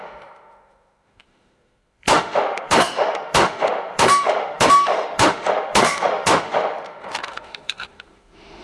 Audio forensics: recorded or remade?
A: remade